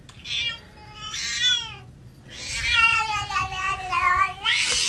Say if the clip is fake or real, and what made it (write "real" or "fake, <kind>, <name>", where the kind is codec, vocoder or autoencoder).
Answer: real